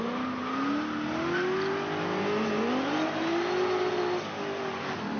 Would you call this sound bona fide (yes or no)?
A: yes